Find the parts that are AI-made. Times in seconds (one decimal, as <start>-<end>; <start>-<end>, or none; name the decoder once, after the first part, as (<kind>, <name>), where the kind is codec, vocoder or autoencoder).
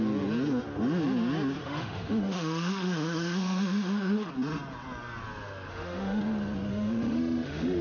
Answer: 1.6-4.3 (autoencoder, DAC-VAE); 5.7-6.2; 6.7-7.8